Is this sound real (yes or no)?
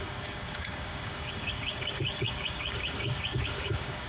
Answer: no